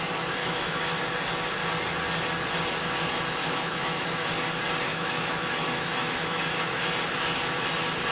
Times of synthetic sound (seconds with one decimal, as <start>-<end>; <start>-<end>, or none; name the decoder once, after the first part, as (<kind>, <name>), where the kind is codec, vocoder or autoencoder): 0.4-1.0 (autoencoder, DAC-VAE); 3.4-4.3; 4.9-6.9